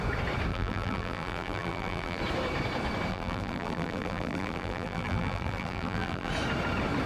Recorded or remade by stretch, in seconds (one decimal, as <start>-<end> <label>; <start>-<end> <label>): 0.0-0.5 recorded; 0.5-2.2 remade; 2.2-3.1 recorded; 3.1-6.3 remade; 6.3-7.1 recorded

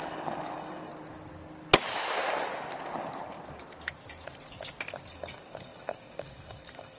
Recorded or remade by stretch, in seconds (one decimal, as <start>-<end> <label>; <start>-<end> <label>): 0.0-0.9 remade; 0.9-5.1 recorded; 5.1-7.0 remade

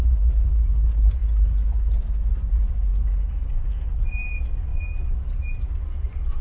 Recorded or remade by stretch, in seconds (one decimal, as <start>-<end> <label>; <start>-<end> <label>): 0.0-1.2 remade; 1.2-2.3 recorded; 2.3-2.9 remade; 2.9-4.0 recorded; 4.0-4.7 remade; 4.7-5.3 recorded; 5.3-6.4 remade

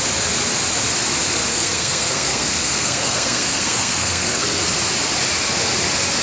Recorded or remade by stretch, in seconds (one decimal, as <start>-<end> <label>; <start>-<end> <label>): 0.0-1.5 recorded; 1.5-4.6 remade; 4.6-6.2 recorded

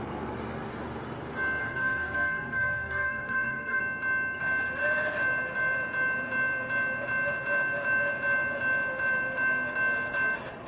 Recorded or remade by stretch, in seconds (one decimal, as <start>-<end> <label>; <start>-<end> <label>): 0.0-1.6 recorded; 1.6-3.8 remade; 3.8-10.7 recorded

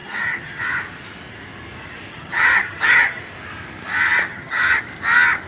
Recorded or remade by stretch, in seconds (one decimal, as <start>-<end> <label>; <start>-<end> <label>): 0.0-0.6 remade; 0.6-2.1 recorded; 2.1-3.2 remade; 3.2-4.3 recorded; 4.3-4.8 remade; 4.8-5.5 recorded

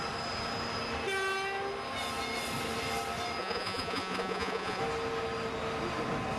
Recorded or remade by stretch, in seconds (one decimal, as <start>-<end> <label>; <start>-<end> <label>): 0.0-3.4 recorded; 3.4-4.8 remade; 4.8-6.4 recorded

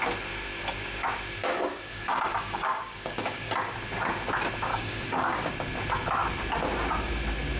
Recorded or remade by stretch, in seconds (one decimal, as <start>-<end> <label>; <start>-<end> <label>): 0.0-1.4 recorded; 1.4-3.5 remade; 3.5-4.7 recorded; 4.7-5.5 remade; 5.5-7.6 recorded